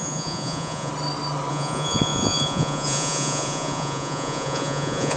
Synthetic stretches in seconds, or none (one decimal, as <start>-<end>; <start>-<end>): 0.0-0.9; 1.5-5.2

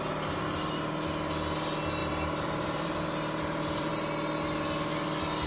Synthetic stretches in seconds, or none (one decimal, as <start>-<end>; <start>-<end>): 2.0-3.9